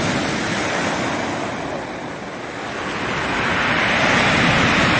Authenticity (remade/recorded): recorded